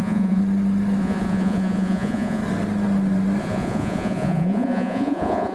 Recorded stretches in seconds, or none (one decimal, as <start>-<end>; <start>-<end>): 0.4-1.0; 2.4-3.4